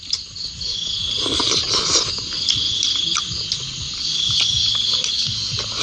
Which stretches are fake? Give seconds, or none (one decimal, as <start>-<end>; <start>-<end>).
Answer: none